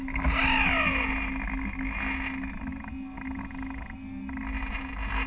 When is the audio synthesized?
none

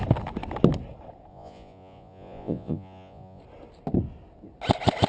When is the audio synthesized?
1.3-3.4